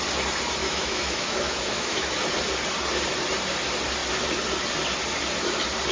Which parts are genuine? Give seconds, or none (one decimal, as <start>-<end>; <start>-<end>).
0.0-0.6; 2.1-5.9